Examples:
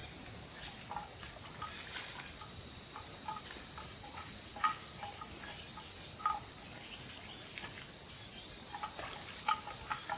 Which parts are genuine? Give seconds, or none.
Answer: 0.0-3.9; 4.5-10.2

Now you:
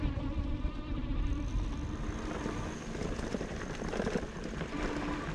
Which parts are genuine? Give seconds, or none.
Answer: 0.0-5.3

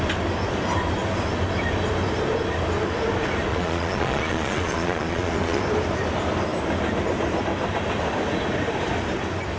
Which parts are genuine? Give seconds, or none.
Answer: 0.0-3.5; 5.6-9.6

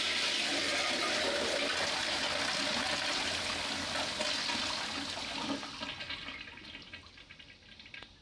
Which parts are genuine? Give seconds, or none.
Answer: 0.0-8.2